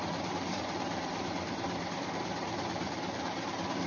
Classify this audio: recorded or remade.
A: remade